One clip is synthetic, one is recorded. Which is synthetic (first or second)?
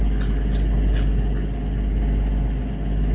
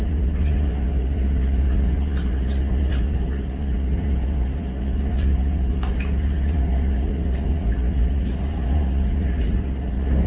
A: second